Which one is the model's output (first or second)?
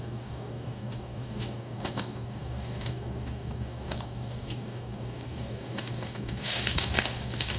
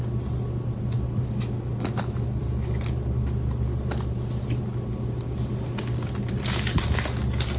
first